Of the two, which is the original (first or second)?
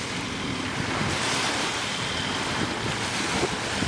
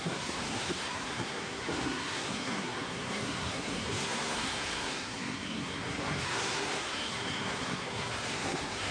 first